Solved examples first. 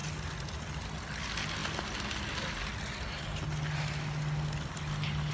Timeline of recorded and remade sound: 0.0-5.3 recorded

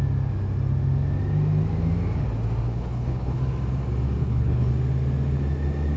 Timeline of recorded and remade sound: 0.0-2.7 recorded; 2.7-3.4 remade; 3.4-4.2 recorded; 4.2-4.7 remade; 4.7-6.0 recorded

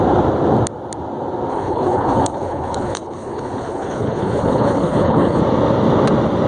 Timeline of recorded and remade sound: 0.0-1.5 recorded; 1.5-5.4 remade; 5.4-6.5 recorded